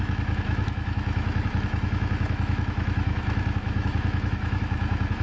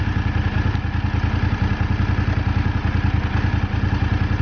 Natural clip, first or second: second